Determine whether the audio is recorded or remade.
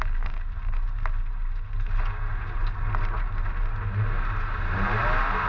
recorded